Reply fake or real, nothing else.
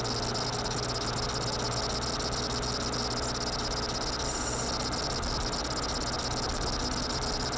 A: real